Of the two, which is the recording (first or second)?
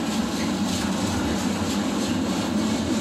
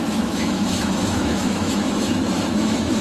first